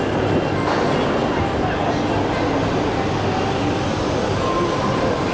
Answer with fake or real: real